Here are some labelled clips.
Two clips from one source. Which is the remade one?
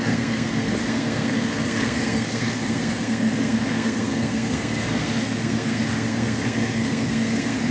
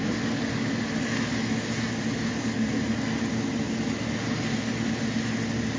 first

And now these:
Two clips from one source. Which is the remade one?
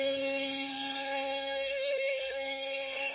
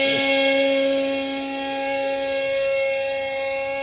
first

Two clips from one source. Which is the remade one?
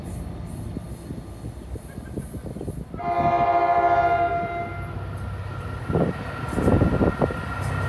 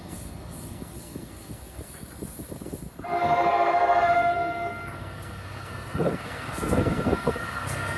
second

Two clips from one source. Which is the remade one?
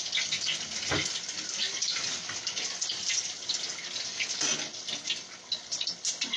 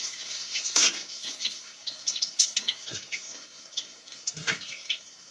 second